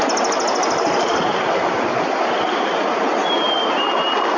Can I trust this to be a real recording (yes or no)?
yes